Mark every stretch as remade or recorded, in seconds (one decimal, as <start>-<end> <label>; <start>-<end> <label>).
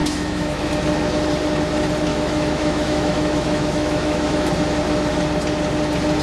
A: 0.0-0.7 remade; 0.7-2.1 recorded; 2.1-4.5 remade; 4.5-6.2 recorded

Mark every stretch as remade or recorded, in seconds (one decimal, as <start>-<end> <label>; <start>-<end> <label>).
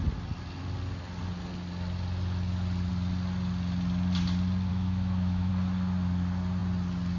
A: 0.0-4.7 recorded; 4.7-5.5 remade; 5.5-7.2 recorded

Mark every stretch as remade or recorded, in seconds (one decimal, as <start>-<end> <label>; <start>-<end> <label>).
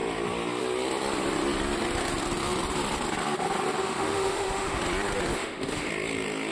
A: 0.0-3.8 recorded; 3.8-4.8 remade; 4.8-5.3 recorded; 5.3-5.9 remade; 5.9-6.5 recorded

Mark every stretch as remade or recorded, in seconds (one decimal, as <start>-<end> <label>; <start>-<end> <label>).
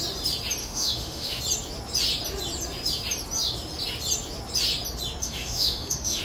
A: 0.0-0.6 recorded; 0.6-1.4 remade; 1.4-5.2 recorded; 5.2-6.2 remade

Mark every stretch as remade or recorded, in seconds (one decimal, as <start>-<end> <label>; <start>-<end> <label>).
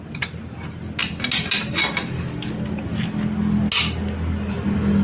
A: 0.0-5.0 recorded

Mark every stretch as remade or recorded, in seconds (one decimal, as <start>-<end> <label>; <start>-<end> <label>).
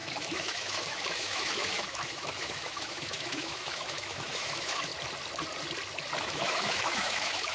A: 0.0-4.9 remade; 4.9-6.2 recorded; 6.2-7.5 remade